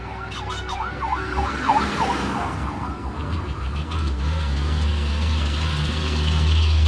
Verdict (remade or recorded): remade